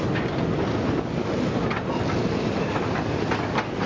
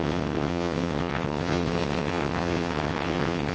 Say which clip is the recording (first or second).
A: first